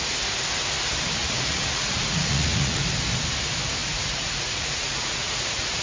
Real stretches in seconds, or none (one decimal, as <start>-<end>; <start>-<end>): 0.0-1.2; 2.8-3.8